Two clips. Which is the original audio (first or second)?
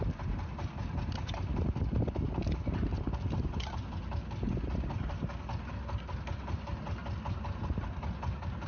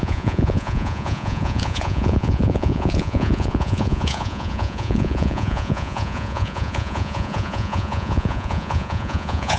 first